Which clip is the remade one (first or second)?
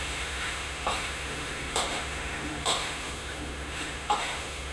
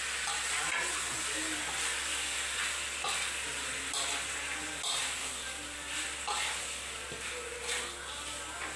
first